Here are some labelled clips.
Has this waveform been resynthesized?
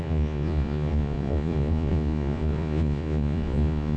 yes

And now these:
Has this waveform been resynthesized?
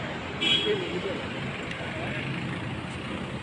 no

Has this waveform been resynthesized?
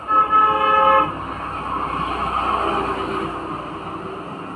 no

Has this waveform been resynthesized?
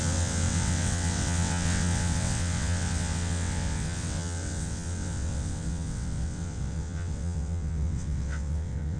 yes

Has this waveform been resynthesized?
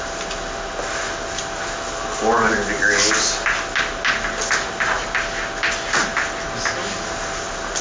no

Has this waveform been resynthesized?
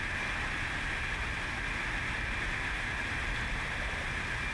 no